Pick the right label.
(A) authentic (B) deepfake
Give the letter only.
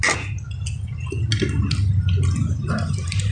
A